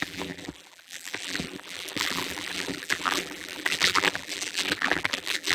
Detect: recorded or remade remade